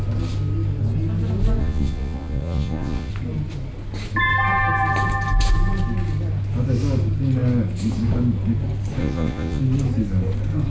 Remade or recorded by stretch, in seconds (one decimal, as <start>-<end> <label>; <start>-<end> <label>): 0.0-1.6 recorded; 1.6-3.1 remade; 3.1-9.0 recorded; 9.0-9.6 remade; 9.6-10.7 recorded

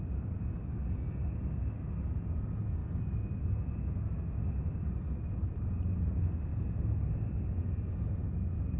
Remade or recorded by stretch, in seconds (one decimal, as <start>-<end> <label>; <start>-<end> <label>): 0.0-8.8 recorded

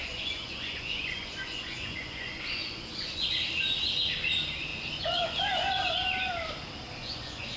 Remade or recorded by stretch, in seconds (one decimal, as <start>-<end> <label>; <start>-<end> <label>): 0.0-3.3 remade; 3.3-4.7 recorded; 4.7-6.3 remade; 6.3-7.0 recorded; 7.0-7.6 remade

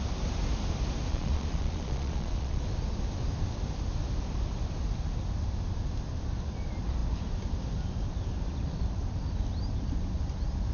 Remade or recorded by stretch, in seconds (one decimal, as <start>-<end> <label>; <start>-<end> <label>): 0.0-1.1 recorded; 1.1-2.6 remade; 2.6-10.7 recorded

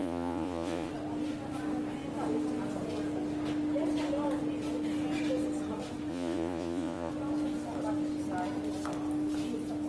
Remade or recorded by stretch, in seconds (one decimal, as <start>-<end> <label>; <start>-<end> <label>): 0.0-0.9 remade; 0.9-6.1 recorded; 6.1-7.1 remade; 7.1-9.9 recorded

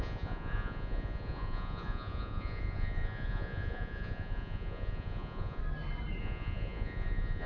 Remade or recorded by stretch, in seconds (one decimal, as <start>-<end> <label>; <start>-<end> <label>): 0.0-5.6 remade; 5.6-6.2 recorded; 6.2-7.5 remade